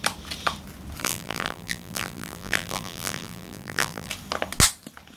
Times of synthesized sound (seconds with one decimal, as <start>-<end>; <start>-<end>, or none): 1.0-4.1